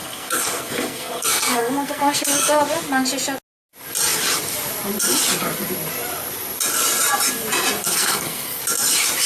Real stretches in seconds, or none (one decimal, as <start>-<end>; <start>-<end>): 2.6-7.8; 8.6-9.3